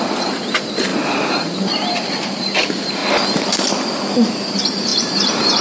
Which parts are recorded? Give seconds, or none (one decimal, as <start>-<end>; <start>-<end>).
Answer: 3.0-4.3